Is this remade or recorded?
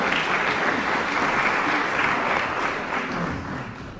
recorded